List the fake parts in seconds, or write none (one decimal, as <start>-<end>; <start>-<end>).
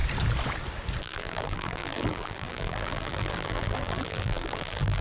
1.0-5.0